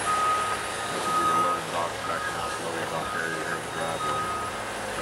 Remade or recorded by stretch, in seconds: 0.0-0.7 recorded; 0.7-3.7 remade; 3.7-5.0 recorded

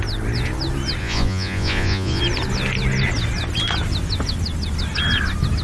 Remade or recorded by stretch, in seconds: 0.0-1.0 recorded; 1.0-2.2 remade; 2.2-5.6 recorded

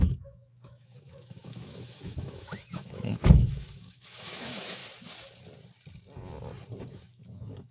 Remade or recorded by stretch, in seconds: 0.0-4.8 remade; 4.8-6.9 recorded; 6.9-7.7 remade

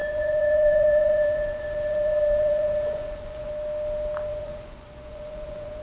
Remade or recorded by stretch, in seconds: 0.0-3.5 remade; 3.5-4.3 recorded; 4.3-5.8 remade